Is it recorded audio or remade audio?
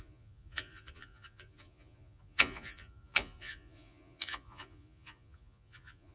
remade